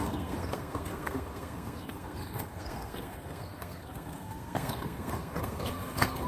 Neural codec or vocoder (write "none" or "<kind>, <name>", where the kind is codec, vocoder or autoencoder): codec, SNAC